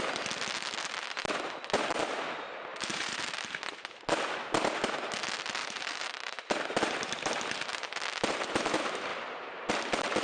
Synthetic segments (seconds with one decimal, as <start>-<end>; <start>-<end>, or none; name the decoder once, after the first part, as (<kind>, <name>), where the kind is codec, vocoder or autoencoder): 2.7-3.2 (vocoder, BigVGAN v2); 5.6-6.4; 9.1-9.7